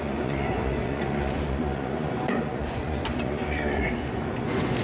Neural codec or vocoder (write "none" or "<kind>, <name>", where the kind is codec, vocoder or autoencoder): vocoder, Vocos